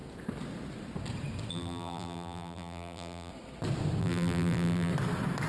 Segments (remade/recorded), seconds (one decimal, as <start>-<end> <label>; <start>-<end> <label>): 0.0-1.5 recorded; 1.5-3.3 remade; 3.3-4.0 recorded; 4.0-4.9 remade; 4.9-5.5 recorded